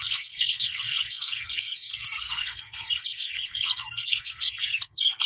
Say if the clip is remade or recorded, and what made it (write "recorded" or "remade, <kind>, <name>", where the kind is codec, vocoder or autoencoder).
remade, codec, SNAC